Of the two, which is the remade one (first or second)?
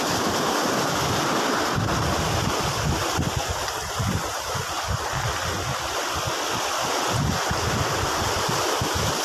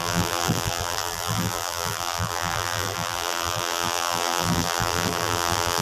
second